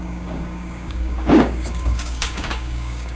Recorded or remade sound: remade